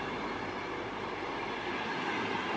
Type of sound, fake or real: real